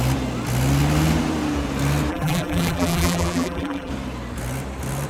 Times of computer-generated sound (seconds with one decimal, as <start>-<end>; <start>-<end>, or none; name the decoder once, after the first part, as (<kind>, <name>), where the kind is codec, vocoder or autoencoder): 2.1-3.9 (vocoder, BigVGAN v2)